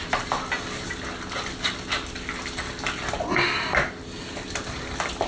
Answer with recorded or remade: recorded